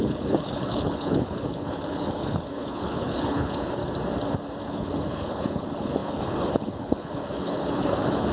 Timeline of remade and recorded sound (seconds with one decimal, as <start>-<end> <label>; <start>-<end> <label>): 0.0-3.8 remade; 3.8-4.6 recorded; 4.6-8.3 remade